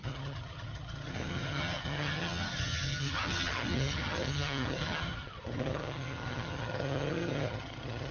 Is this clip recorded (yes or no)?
no